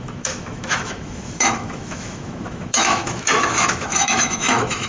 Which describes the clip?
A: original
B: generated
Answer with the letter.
B